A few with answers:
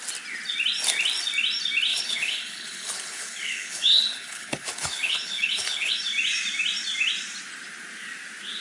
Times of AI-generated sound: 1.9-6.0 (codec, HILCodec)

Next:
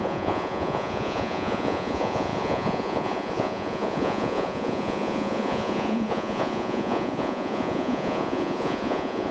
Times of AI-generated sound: 0.0-9.3 (vocoder, Vocos)

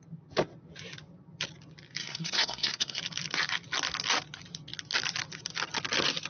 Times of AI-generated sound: 2.0-3.0 (codec, SNAC)

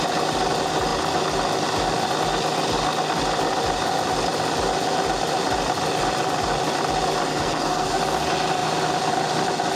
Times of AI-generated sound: 7.3-8.0 (codec, SNAC)

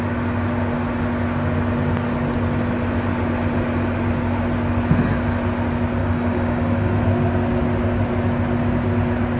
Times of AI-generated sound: 6.0-6.9 (codec, DAC)